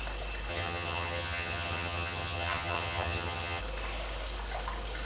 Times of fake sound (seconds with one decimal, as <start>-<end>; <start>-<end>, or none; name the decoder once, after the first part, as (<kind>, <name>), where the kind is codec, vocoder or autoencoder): 0.5-3.6 (vocoder, HiFi-GAN)